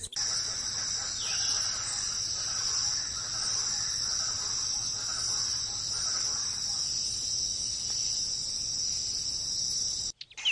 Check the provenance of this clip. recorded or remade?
recorded